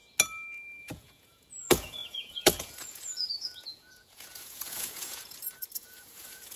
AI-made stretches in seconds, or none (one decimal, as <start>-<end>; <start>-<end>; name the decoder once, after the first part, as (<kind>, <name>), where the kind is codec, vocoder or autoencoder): 0.8-6.6 (vocoder, Vocos)